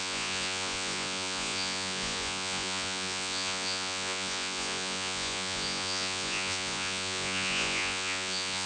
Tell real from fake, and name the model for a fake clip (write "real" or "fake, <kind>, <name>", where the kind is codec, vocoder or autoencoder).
fake, vocoder, Vocos